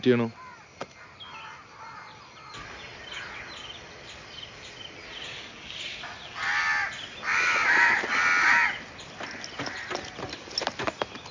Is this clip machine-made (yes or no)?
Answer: no